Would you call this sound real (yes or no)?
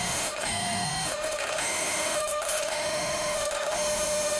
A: no